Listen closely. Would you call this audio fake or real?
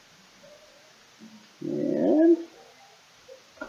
real